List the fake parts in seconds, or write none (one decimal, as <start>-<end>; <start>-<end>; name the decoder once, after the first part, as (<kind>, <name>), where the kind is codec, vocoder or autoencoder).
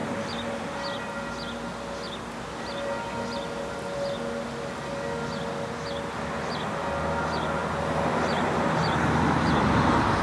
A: none